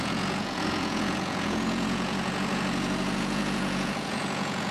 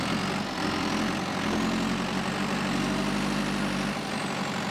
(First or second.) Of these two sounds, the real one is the second